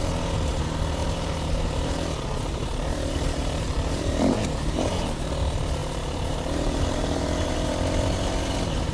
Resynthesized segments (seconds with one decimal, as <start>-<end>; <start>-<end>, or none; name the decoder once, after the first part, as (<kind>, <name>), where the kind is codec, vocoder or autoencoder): 1.0-5.3 (vocoder, BigVGAN v2); 5.8-7.7